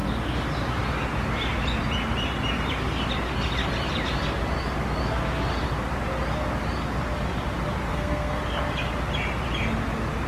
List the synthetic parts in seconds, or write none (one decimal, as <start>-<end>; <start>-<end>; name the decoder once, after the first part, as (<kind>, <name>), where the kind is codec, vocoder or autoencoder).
7.9-8.4 (codec, SNAC)